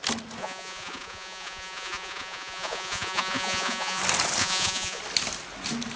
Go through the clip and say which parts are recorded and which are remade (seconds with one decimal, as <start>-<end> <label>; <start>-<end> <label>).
0.0-0.4 recorded; 0.4-4.0 remade; 4.0-4.4 recorded; 4.4-5.0 remade; 5.0-6.0 recorded